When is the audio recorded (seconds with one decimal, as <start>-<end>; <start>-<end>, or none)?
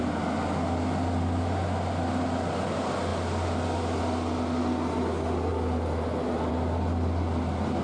0.0-7.8